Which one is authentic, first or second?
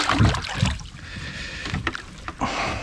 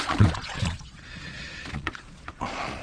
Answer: first